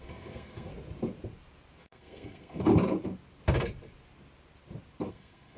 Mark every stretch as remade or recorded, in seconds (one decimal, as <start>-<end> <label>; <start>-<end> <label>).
0.0-0.7 remade; 0.7-1.8 recorded; 1.8-2.7 remade; 2.7-5.1 recorded; 5.1-5.6 remade